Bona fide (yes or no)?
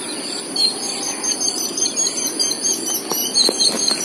yes